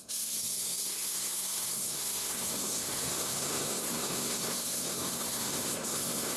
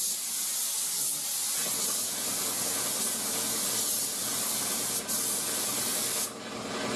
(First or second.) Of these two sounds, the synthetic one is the first